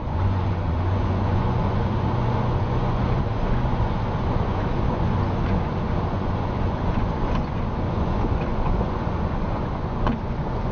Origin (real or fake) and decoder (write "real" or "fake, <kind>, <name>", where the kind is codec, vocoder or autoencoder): fake, vocoder, Vocos